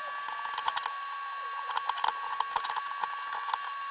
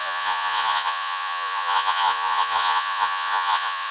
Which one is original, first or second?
first